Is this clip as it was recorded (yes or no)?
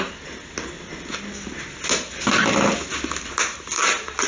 yes